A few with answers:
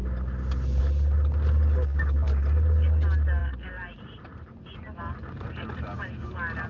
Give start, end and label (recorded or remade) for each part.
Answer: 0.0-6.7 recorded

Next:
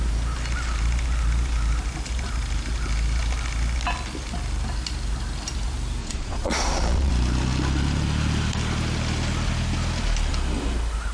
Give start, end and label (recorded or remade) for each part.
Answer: 0.0-6.0 recorded; 6.0-7.1 remade; 7.1-11.1 recorded

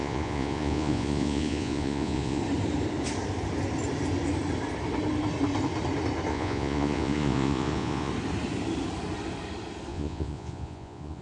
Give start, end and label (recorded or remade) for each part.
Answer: 0.0-2.4 remade; 2.4-6.3 recorded; 6.3-8.1 remade; 8.1-9.9 recorded; 9.9-11.2 remade

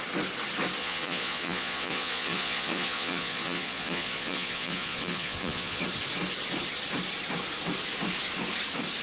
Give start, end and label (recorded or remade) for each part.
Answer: 0.0-0.8 recorded; 0.8-5.8 remade; 5.8-9.0 recorded

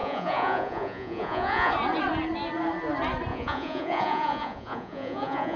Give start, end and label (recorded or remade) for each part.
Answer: 0.0-1.7 remade; 1.7-3.3 recorded; 3.3-5.6 remade

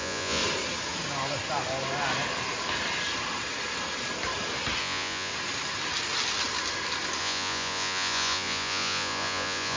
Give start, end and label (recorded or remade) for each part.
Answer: 0.0-0.4 remade; 0.4-4.8 recorded; 4.8-5.3 remade; 5.3-7.2 recorded; 7.2-9.8 remade

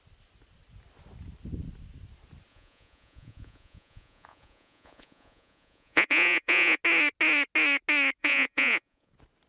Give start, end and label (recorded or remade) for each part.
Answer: 0.0-2.5 recorded; 2.5-6.8 remade; 6.8-8.2 recorded; 8.2-9.1 remade; 9.1-9.5 recorded

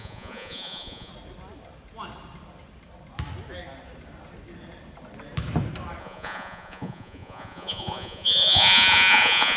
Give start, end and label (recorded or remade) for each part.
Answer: 0.0-1.1 remade; 1.1-6.0 recorded; 6.0-9.6 remade